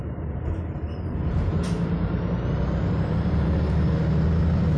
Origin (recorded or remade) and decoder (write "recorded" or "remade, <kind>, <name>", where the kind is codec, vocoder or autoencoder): remade, vocoder, BigVGAN v2